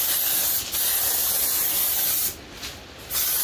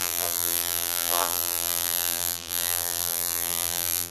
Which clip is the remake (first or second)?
second